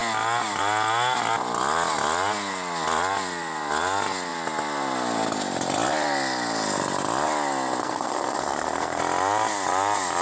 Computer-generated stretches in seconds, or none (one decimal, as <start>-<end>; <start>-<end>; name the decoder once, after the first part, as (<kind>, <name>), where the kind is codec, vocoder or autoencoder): 7.8-9.0 (codec, SNAC)